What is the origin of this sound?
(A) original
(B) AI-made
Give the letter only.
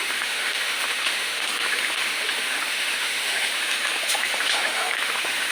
B